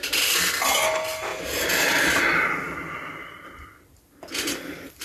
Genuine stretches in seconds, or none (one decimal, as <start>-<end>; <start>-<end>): 0.0-5.0

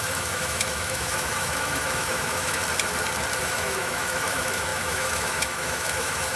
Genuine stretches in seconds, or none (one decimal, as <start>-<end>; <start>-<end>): 2.6-3.4

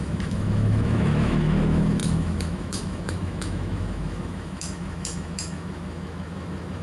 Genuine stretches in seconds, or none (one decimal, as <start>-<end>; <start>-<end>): none

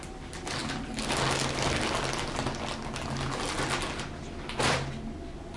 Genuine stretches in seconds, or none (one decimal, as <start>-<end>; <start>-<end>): 0.0-5.6

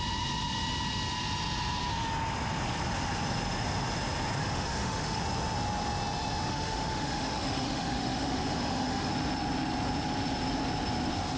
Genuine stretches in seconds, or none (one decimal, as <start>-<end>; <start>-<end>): 0.0-4.4; 5.2-6.5; 9.1-11.4

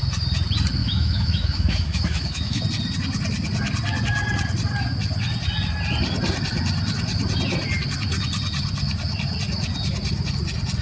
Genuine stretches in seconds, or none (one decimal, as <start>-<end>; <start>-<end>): 0.0-0.8; 2.6-10.8